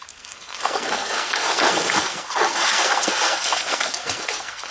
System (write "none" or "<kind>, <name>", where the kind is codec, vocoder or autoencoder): codec, SNAC